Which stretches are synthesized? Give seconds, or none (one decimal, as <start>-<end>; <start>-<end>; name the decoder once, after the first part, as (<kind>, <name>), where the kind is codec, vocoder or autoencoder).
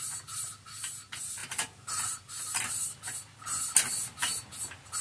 none